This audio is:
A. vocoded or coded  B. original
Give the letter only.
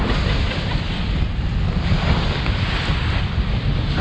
B